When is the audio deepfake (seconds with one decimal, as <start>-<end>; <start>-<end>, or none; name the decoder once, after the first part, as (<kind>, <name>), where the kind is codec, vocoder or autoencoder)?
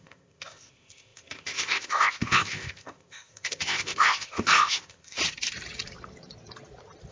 0.0-5.2 (codec, ZipCodec)